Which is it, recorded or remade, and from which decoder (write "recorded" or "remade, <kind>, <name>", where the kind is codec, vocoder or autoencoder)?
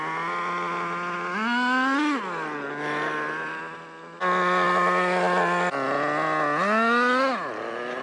recorded